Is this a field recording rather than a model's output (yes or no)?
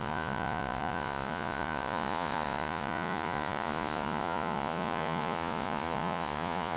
no